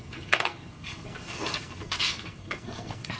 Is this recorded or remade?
remade